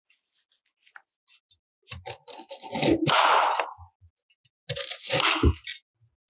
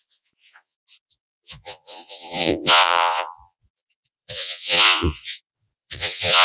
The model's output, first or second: second